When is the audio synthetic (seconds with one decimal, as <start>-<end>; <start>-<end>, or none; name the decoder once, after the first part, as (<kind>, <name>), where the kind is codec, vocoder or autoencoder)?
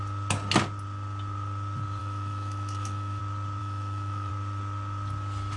2.0-3.2 (autoencoder, DAC-VAE); 3.6-4.3